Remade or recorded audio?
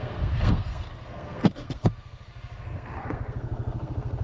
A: remade